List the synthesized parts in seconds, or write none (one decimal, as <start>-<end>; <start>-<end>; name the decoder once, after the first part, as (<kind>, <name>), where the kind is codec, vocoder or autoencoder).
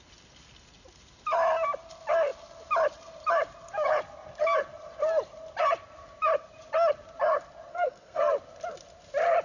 7.7-8.2 (codec, SNAC)